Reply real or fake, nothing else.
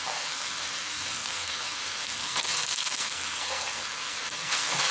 fake